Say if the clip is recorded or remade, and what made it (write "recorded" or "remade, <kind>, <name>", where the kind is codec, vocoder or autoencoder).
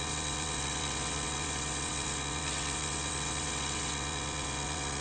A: remade, vocoder, WaveNeXt